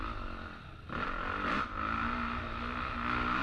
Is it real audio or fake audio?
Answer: real